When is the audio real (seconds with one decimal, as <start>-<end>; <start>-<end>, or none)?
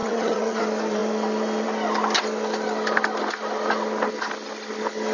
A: 0.6-5.1